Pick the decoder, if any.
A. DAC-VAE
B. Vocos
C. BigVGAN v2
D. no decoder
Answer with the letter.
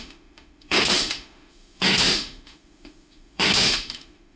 A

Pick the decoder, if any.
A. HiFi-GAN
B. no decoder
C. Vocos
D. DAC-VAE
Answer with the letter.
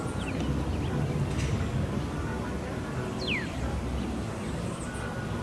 B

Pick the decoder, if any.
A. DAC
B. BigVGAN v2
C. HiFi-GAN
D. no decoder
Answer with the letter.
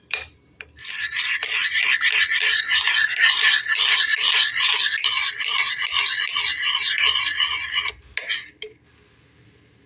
D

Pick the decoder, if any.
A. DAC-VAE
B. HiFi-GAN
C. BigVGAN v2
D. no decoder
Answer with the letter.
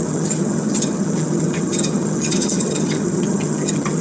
B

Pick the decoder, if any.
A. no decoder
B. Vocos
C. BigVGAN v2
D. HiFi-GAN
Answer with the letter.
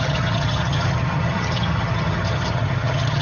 D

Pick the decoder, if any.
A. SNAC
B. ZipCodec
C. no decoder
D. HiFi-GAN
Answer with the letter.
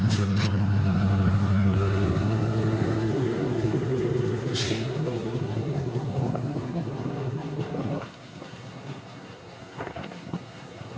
A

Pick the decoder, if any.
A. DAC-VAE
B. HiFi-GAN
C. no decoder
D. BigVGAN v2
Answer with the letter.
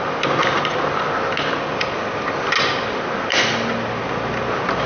C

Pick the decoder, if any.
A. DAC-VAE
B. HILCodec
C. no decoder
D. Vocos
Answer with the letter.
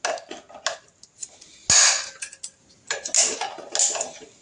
C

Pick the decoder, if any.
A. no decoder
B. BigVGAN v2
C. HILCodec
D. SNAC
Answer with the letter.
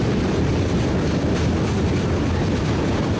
A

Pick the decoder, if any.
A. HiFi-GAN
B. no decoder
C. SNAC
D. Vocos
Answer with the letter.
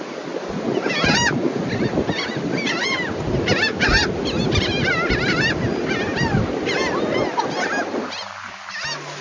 B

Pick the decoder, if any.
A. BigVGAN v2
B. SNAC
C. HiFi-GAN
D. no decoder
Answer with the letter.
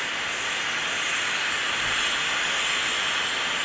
D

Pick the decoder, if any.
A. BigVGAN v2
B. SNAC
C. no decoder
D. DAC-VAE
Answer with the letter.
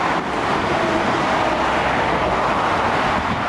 C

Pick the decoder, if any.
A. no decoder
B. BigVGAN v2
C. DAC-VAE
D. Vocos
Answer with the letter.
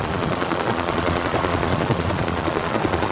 D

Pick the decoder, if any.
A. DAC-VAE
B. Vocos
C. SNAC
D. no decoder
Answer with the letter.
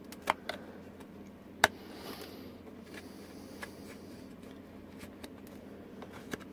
D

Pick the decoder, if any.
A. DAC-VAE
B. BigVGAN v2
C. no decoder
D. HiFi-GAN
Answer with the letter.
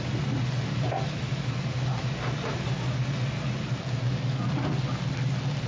C